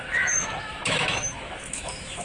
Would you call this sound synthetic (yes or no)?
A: yes